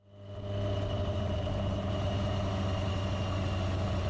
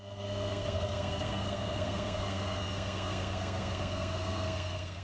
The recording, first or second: first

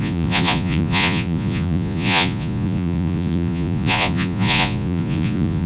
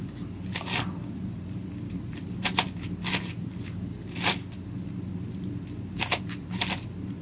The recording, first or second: second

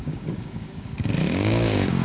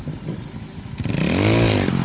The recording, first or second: second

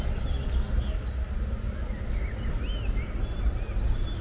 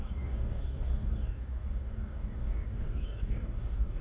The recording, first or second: first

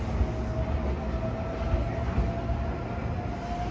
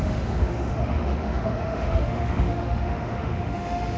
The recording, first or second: first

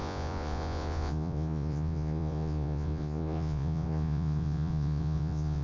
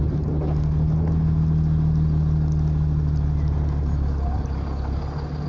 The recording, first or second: second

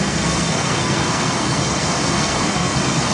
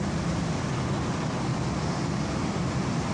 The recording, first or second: second